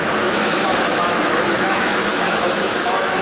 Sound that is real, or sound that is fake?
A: fake